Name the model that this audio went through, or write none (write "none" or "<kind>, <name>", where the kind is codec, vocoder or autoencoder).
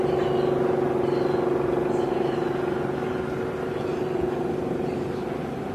none